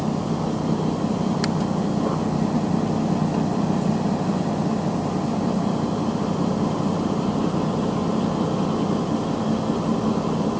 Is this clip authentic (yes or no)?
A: yes